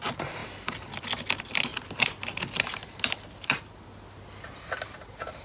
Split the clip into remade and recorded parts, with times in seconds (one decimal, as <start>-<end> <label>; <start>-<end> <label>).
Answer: 0.0-5.4 recorded